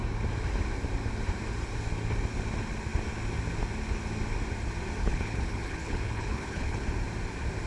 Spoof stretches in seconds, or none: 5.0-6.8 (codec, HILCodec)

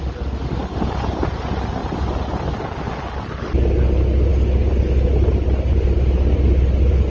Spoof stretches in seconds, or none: none

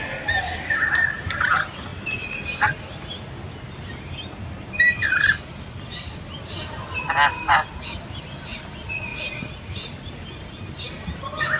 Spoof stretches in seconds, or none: none

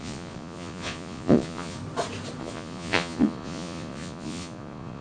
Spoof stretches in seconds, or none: 0.0-1.8 (vocoder, Vocos); 2.4-5.0

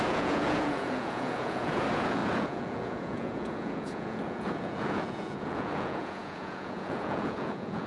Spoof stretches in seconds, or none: 0.0-7.9 (vocoder, Vocos)

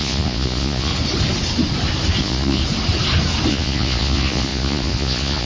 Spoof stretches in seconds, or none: 0.0-0.9 (vocoder, Vocos); 2.2-2.6; 3.5-5.4